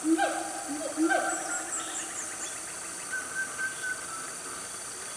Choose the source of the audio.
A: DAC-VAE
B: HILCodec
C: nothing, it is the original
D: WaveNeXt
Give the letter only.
C